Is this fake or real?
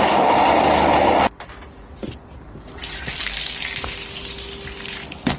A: real